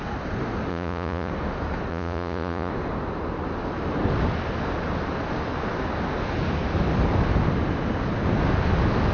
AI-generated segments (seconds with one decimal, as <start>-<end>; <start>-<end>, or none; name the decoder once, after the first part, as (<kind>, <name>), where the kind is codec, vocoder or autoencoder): 0.7-1.3 (vocoder, Vocos); 1.9-2.7